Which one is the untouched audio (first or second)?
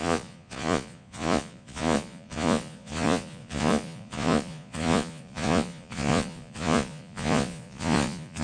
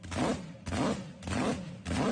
second